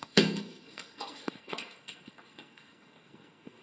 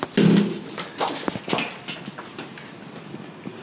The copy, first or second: first